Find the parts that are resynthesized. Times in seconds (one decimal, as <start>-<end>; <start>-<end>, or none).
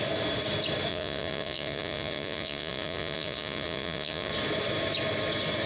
0.9-4.3